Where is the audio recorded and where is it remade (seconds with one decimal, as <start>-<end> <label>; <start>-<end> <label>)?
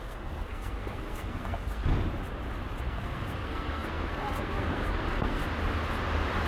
0.0-1.8 remade; 1.8-2.8 recorded; 2.8-5.4 remade; 5.4-6.5 recorded